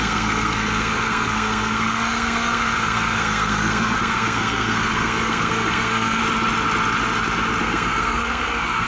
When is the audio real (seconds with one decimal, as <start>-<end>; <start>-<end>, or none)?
6.2-7.6

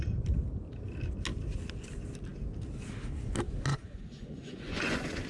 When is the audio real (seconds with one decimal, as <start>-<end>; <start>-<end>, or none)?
0.0-3.7

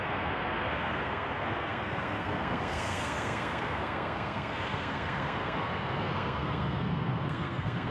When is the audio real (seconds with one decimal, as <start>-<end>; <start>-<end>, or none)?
none

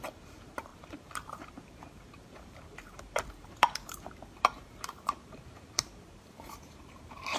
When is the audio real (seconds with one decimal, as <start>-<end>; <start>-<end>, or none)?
none